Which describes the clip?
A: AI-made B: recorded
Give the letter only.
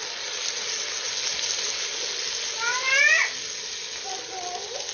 B